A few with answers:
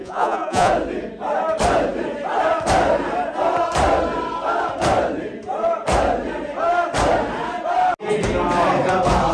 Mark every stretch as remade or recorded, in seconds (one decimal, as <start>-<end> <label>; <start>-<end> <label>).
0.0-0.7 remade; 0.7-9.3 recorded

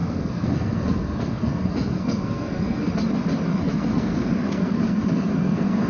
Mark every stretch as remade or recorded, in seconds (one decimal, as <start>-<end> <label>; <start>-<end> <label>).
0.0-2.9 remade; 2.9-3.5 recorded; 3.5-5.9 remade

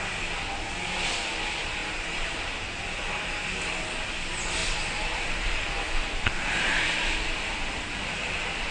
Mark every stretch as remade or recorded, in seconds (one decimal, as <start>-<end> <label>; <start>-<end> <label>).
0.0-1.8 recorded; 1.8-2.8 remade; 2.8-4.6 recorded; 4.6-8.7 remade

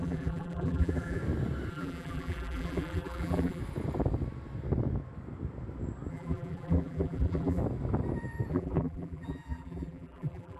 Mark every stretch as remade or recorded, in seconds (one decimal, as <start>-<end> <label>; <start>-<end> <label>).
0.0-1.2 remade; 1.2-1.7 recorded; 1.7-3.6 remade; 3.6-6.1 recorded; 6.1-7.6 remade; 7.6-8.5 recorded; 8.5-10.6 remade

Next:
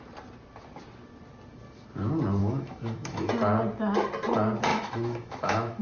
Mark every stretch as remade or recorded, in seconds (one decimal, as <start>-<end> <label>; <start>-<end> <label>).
0.0-2.4 recorded; 2.4-3.3 remade; 3.3-4.7 recorded; 4.7-5.8 remade

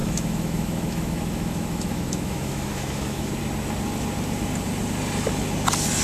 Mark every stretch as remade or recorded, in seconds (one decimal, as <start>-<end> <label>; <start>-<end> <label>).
0.0-3.3 remade; 3.3-6.0 recorded

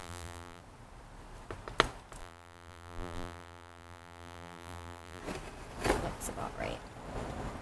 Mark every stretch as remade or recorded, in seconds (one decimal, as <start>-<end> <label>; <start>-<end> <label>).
0.0-0.6 remade; 0.6-2.2 recorded; 2.2-5.2 remade; 5.2-7.6 recorded

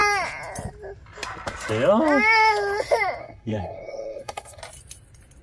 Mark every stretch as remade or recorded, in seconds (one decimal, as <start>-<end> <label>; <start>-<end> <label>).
0.0-3.2 recorded; 3.2-4.6 remade; 4.6-5.4 recorded